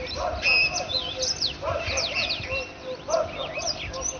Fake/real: real